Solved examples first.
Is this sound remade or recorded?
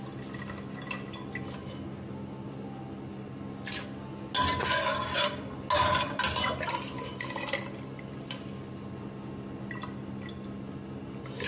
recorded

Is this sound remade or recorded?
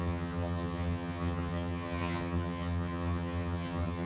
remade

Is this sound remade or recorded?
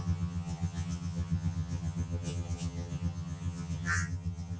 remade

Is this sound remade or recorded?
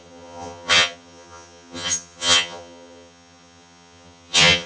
remade